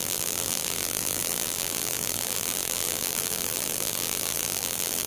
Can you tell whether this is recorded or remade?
remade